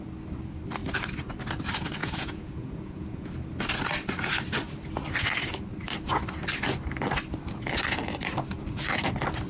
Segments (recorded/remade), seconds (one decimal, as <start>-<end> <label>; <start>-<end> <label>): 0.0-2.0 recorded; 2.0-3.3 remade; 3.3-9.5 recorded